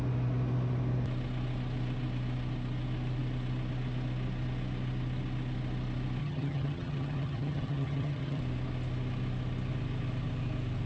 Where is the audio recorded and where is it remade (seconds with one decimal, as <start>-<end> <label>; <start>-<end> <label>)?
0.0-6.2 recorded; 6.2-8.4 remade; 8.4-10.9 recorded